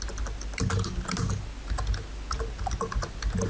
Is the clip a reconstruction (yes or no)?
no